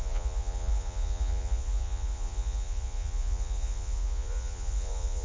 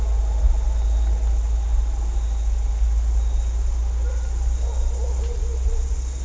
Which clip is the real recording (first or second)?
second